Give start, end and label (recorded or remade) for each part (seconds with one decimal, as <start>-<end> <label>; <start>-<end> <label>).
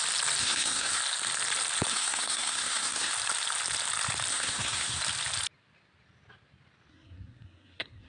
0.0-0.4 recorded; 0.4-1.0 remade; 1.0-1.9 recorded; 1.9-3.1 remade; 3.1-4.3 recorded; 4.3-5.0 remade; 5.0-6.9 recorded; 6.9-8.1 remade